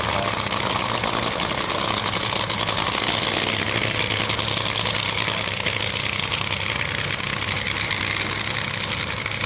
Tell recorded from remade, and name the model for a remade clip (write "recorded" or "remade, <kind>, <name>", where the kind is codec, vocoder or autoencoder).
recorded